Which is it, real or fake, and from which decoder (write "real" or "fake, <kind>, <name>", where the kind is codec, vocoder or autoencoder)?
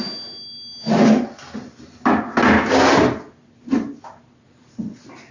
real